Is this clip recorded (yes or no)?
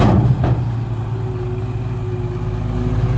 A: yes